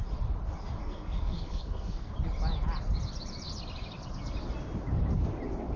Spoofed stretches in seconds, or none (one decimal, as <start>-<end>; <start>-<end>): 0.8-2.1